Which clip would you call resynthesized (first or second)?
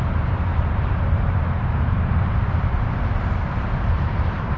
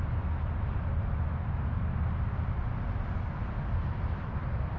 first